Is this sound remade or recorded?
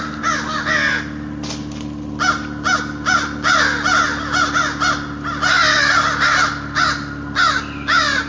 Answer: recorded